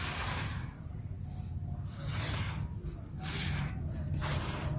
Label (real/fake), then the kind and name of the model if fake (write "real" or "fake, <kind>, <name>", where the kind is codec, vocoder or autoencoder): real